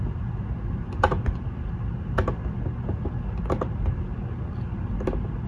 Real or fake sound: real